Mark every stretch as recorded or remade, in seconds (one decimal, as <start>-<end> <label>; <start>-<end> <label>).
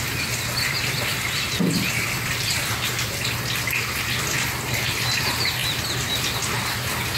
0.0-1.1 recorded; 1.1-2.6 remade; 2.6-7.2 recorded